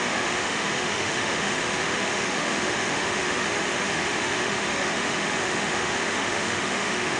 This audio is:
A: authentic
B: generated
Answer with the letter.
B